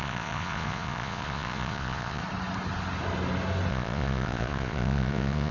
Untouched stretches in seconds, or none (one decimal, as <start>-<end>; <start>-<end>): 2.2-3.7